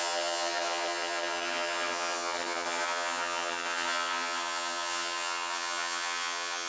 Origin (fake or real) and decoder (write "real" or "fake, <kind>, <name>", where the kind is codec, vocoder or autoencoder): fake, vocoder, HiFi-GAN